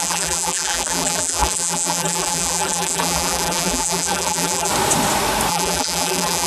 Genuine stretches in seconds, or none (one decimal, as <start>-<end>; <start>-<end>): 4.7-5.5